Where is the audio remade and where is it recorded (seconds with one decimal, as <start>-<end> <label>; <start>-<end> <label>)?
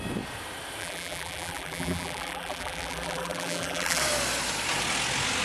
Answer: 0.0-0.8 recorded; 0.8-4.0 remade; 4.0-5.4 recorded